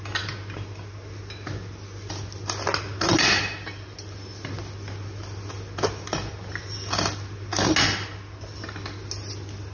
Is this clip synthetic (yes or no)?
no